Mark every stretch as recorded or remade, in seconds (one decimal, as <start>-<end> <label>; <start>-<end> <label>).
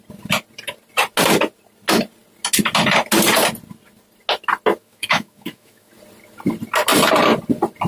0.0-4.8 recorded; 4.8-5.9 remade; 5.9-7.9 recorded